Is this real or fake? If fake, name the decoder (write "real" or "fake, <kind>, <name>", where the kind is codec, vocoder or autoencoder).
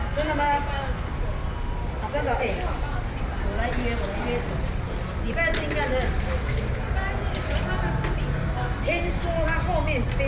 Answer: real